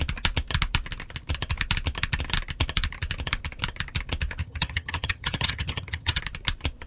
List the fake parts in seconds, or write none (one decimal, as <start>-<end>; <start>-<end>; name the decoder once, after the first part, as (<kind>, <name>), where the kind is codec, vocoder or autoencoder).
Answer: 4.4-6.2 (vocoder, HiFi-GAN)